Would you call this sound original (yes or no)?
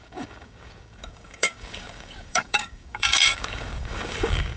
no